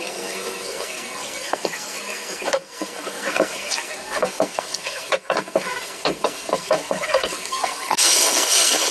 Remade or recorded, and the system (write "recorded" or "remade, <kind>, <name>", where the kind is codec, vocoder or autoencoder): remade, codec, SNAC